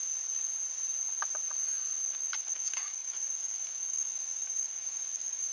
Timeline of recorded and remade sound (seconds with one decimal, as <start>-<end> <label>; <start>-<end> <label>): 0.0-2.4 recorded; 2.4-5.5 remade